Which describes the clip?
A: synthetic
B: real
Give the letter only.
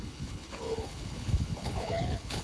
A